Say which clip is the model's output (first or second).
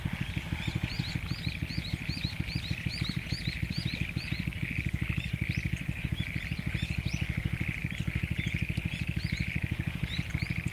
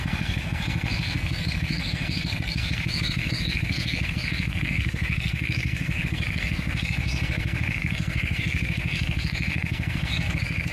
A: second